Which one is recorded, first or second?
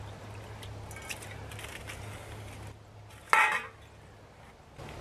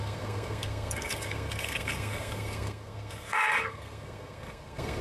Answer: first